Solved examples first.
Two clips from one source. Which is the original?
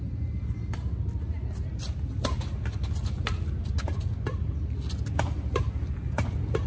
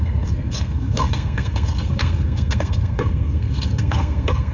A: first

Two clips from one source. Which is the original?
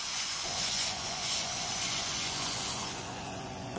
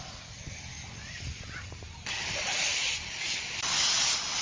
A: second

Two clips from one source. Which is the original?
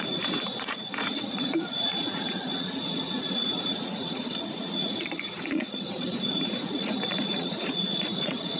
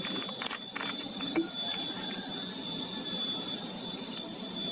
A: second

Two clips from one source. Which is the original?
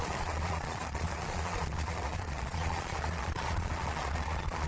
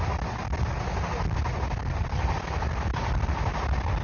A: second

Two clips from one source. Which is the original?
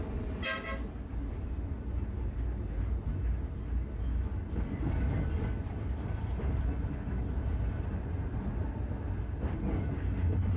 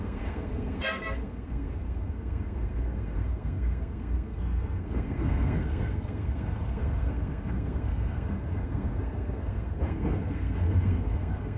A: first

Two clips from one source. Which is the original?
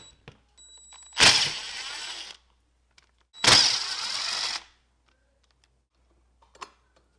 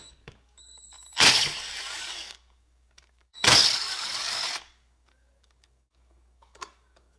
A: first